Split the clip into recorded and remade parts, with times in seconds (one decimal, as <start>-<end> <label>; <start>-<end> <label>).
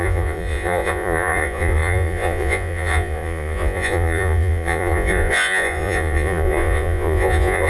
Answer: 0.0-7.7 remade